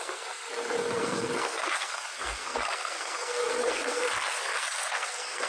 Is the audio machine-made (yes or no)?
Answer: yes